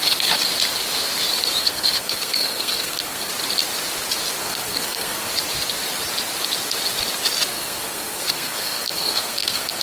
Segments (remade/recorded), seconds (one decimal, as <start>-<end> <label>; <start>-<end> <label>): 0.0-1.6 recorded; 1.6-3.3 remade; 3.3-4.4 recorded; 4.4-5.3 remade; 5.3-7.5 recorded; 7.5-9.8 remade